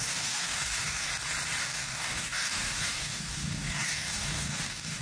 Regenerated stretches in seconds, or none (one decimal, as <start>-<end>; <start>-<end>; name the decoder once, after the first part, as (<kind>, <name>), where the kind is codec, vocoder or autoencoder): 0.0-1.1 (codec, DAC); 1.6-5.0